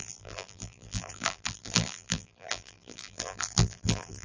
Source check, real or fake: fake